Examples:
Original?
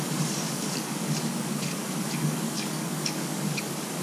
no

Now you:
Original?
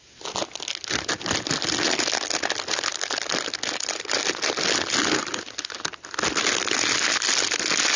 yes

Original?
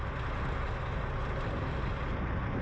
yes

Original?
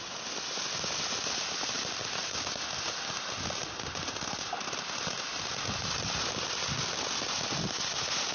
yes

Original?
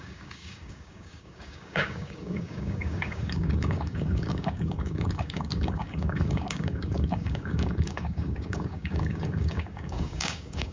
no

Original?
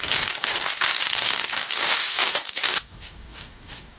no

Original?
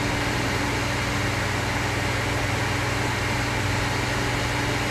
yes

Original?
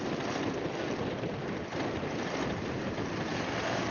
yes